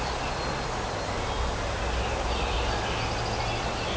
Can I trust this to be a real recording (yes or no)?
yes